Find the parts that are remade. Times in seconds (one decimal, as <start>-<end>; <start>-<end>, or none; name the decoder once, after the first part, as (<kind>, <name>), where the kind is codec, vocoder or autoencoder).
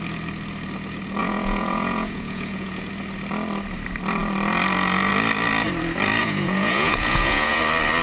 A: 1.2-2.9 (vocoder, Vocos); 6.2-7.6